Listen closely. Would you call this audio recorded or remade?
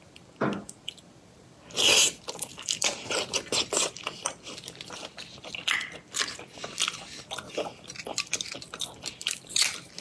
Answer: remade